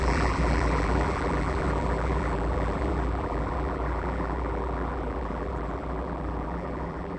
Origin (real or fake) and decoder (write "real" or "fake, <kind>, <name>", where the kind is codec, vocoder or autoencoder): fake, vocoder, BigVGAN v2